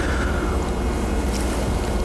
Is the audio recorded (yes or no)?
yes